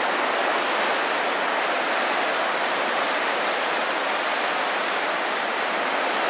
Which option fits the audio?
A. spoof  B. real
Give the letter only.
B